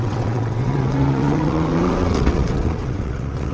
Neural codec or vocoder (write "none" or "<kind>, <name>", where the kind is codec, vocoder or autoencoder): vocoder, WaveNeXt